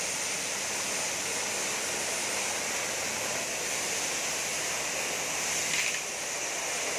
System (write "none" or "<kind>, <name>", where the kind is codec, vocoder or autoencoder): none